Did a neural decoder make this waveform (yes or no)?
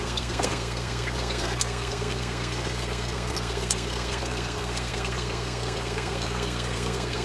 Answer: yes